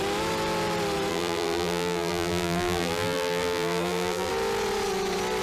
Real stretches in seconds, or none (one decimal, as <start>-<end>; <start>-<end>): 0.0-1.1; 4.3-5.4